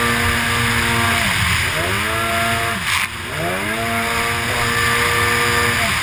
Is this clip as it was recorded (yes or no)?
yes